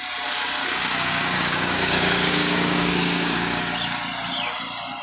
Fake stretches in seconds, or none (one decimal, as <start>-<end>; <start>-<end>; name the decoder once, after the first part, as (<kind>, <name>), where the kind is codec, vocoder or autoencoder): 0.6-3.6 (codec, DAC)